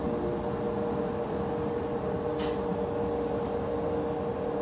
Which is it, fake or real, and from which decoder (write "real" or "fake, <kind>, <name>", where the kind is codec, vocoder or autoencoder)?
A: real